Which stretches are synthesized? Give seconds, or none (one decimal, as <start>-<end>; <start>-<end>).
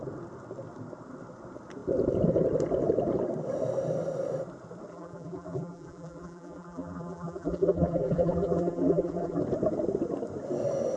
4.9-9.4